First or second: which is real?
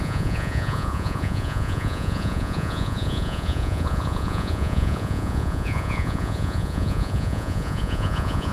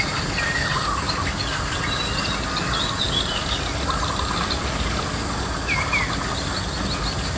second